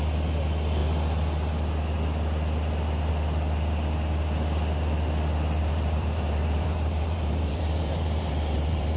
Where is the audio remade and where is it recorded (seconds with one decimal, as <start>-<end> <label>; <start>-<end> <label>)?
0.0-5.6 recorded; 5.6-9.0 remade